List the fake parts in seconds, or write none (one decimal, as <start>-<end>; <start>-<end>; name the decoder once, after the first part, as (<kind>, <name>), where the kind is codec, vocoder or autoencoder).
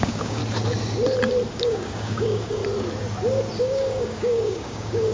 0.0-0.4 (codec, DAC); 1.5-2.6; 3.6-5.1